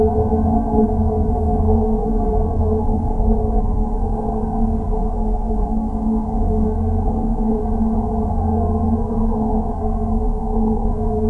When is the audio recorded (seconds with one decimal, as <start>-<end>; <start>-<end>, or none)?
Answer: 7.6-8.3